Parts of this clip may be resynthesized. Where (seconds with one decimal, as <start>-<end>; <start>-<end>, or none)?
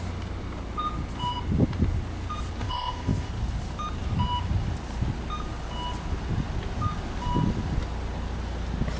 2.6-3.3